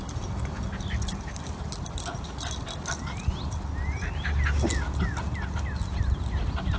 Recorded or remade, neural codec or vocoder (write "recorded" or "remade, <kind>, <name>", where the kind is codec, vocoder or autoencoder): recorded